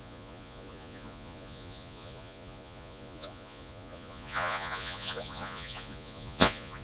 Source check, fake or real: fake